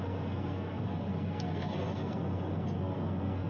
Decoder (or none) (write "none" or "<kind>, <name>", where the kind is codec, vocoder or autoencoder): codec, SNAC